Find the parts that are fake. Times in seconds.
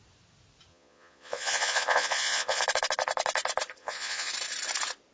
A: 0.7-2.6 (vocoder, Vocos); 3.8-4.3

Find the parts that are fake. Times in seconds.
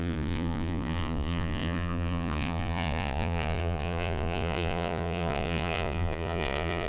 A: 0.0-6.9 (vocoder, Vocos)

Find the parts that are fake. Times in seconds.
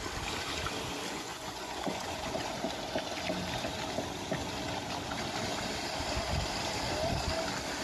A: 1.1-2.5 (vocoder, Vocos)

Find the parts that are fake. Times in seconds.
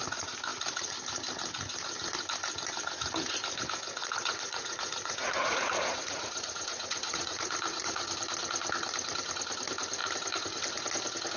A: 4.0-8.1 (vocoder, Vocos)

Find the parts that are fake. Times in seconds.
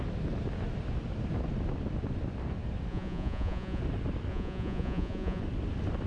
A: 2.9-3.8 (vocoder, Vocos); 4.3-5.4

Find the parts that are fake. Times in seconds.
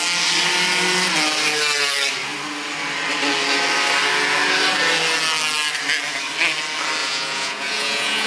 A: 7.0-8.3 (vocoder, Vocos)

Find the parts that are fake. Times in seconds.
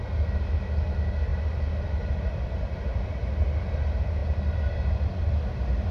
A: none